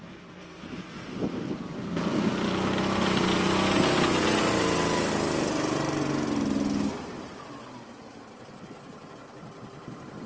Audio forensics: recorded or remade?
recorded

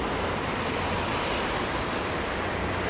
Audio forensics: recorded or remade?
recorded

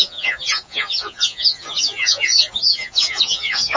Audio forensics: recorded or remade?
remade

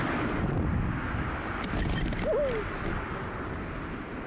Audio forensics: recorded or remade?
recorded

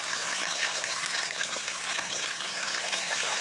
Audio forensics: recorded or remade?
remade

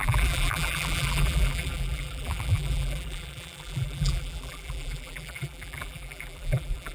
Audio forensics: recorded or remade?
remade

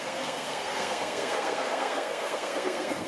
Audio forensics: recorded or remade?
remade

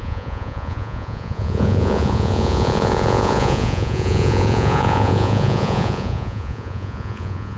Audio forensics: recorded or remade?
remade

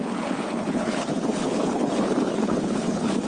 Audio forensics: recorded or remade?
remade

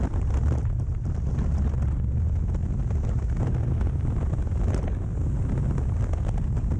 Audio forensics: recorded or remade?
recorded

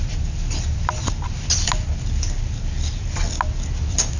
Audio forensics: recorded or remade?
recorded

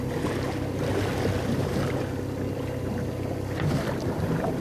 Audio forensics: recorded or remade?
recorded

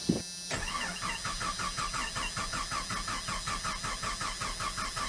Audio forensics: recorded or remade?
recorded